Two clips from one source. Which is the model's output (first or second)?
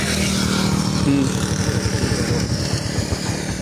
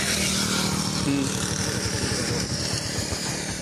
second